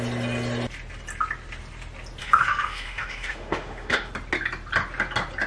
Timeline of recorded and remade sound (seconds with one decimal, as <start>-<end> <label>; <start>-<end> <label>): 0.0-2.2 recorded; 2.2-4.1 remade; 4.1-5.5 recorded